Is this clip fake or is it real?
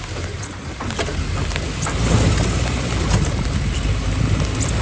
real